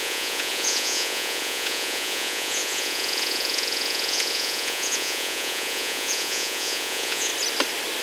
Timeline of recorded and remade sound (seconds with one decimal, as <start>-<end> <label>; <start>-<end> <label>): 0.0-7.3 remade; 7.3-8.0 recorded